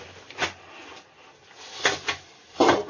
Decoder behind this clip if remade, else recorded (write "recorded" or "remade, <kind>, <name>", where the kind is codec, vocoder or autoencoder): recorded